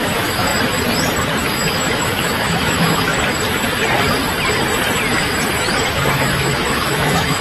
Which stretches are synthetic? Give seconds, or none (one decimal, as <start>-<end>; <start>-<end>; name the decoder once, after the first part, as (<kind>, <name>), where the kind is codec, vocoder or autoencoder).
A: 0.0-0.5 (autoencoder, DAC-VAE); 1.4-3.1; 5.9-7.4